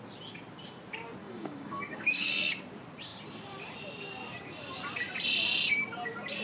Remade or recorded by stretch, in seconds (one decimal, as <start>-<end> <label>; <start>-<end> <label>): 0.0-1.2 recorded; 1.2-2.3 remade; 2.3-6.4 recorded